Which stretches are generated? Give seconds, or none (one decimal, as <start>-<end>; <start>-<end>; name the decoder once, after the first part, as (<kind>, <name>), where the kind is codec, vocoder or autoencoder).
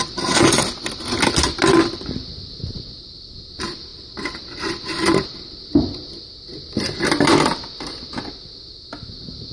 none